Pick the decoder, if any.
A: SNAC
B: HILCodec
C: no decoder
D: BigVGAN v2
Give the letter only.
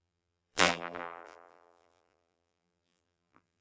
D